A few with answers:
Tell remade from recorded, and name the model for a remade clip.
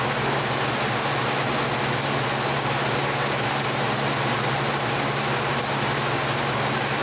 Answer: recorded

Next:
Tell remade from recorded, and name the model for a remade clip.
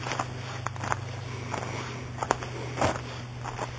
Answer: recorded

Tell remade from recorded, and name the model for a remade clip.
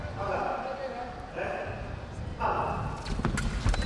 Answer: recorded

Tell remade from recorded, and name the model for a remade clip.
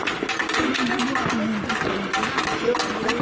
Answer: recorded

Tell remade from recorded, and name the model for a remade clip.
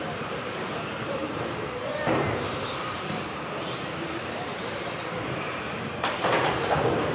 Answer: remade, vocoder, BigVGAN v2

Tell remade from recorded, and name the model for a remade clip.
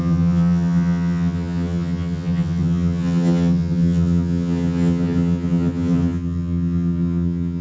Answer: remade, vocoder, HiFi-GAN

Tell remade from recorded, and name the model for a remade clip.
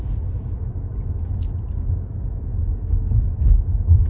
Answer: recorded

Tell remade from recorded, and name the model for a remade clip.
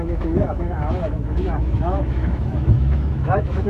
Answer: remade, autoencoder, DAC-VAE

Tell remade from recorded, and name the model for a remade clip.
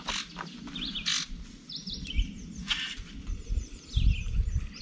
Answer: recorded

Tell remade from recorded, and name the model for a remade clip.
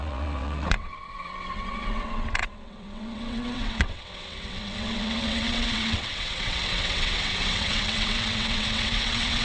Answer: remade, vocoder, WaveNeXt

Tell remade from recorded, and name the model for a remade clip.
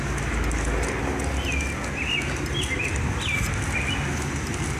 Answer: recorded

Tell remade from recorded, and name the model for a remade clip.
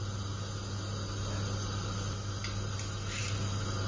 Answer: recorded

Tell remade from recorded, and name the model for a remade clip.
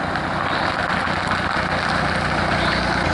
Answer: recorded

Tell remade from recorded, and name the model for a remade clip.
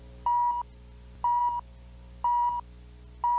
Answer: recorded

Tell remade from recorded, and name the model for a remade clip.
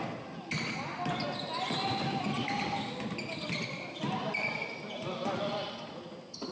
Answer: recorded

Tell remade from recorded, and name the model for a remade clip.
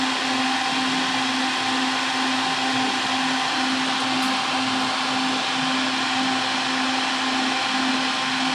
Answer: recorded